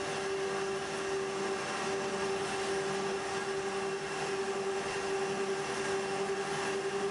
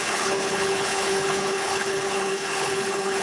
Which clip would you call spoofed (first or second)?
second